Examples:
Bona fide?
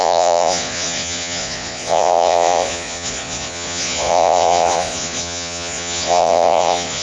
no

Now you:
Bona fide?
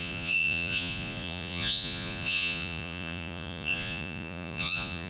no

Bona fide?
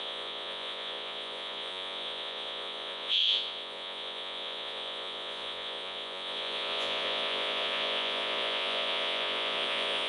no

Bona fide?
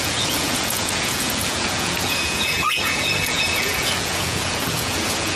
no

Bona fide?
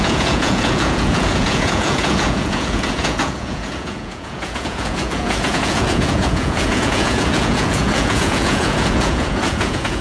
no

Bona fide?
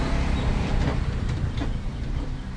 yes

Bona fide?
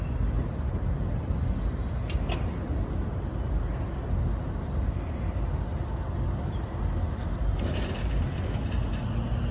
yes